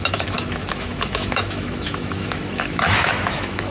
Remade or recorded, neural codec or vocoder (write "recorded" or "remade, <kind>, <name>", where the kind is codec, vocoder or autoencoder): remade, autoencoder, DAC-VAE